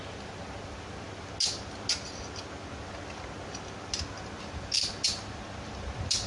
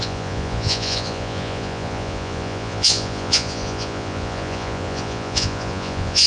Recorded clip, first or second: first